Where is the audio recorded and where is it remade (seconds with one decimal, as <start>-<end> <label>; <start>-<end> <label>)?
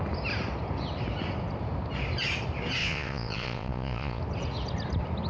0.0-2.8 recorded; 2.8-4.2 remade; 4.2-5.3 recorded